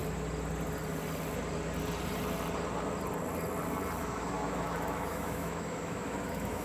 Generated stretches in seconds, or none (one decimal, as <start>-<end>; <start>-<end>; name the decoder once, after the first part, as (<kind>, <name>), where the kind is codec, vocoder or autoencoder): 4.0-6.6 (autoencoder, DAC-VAE)